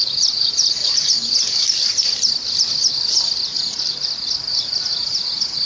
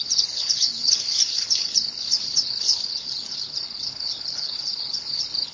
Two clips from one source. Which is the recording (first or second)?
first